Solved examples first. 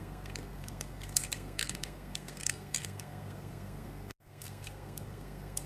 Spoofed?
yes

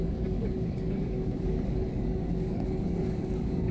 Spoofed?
yes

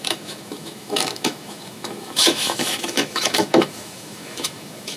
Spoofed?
yes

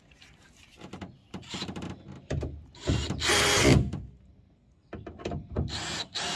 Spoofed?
no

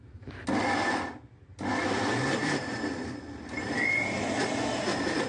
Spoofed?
no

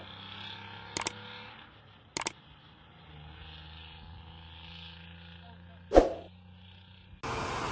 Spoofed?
no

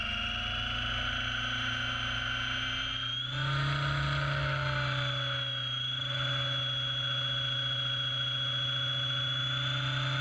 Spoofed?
no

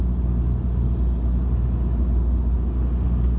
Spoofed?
no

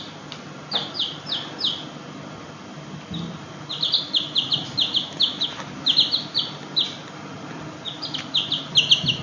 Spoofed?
no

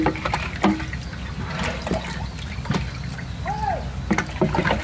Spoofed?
no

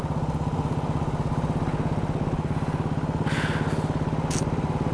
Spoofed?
no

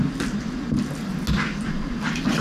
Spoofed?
no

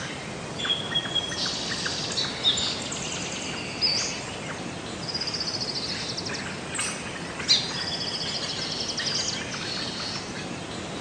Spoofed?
no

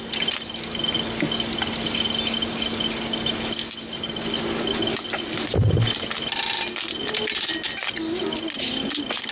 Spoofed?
no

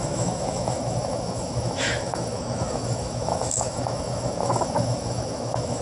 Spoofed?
yes